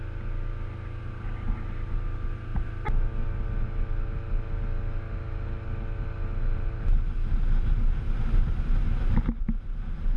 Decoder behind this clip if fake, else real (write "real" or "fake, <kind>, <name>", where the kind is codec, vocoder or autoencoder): real